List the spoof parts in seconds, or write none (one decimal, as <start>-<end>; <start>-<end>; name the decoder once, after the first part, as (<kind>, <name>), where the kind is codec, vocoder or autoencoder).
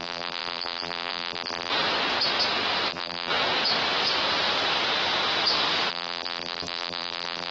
0.0-1.7 (vocoder, BigVGAN v2); 2.9-3.3; 5.9-7.5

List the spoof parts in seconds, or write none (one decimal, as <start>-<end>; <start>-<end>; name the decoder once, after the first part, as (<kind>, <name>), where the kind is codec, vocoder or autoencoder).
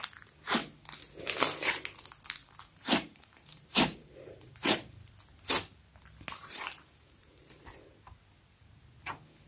2.4-5.1 (vocoder, BigVGAN v2); 6.4-7.5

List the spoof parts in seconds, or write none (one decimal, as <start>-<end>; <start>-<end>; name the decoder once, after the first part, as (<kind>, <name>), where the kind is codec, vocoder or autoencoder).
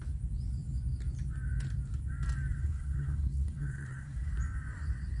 2.6-4.3 (codec, SNAC)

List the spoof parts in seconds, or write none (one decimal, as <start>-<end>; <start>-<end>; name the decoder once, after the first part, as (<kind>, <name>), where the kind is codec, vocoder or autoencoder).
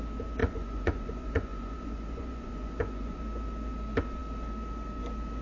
0.4-3.2 (vocoder, Vocos)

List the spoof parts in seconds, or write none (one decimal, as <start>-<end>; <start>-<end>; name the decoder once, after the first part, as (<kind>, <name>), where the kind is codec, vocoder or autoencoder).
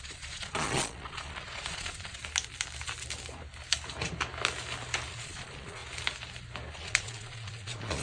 0.0-2.2 (vocoder, Vocos); 5.1-5.8; 6.7-8.0